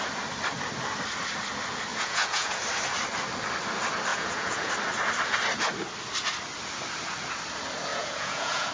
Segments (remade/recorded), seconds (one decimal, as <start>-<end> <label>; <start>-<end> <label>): 0.0-1.9 recorded; 1.9-2.6 remade; 2.6-4.1 recorded; 4.1-4.7 remade; 4.7-7.9 recorded; 7.9-8.7 remade